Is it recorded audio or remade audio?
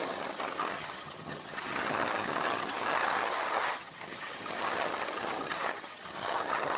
remade